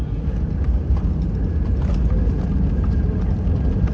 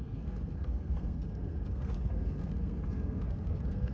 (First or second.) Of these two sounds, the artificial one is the second